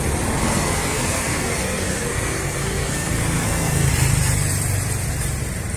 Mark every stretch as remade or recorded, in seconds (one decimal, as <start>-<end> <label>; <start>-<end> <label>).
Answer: 0.0-0.4 recorded; 0.4-3.9 remade; 3.9-5.8 recorded